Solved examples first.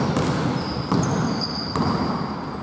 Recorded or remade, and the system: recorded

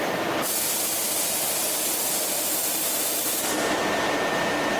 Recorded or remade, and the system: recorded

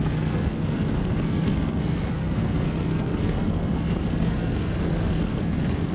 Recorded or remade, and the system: remade, codec, SNAC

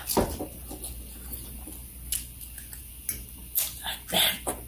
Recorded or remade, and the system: recorded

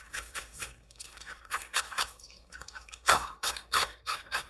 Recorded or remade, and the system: remade, codec, SNAC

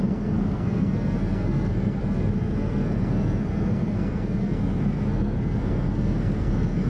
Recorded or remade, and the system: remade, codec, SNAC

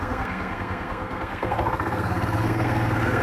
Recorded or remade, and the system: remade, codec, SNAC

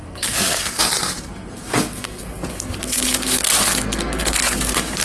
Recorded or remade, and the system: remade, codec, SNAC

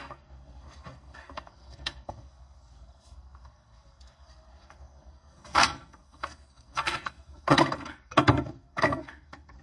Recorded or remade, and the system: remade, codec, SNAC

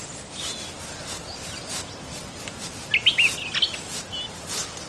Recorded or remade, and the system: recorded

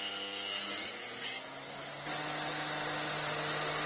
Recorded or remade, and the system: recorded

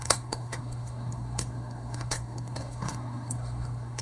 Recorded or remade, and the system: remade, codec, SNAC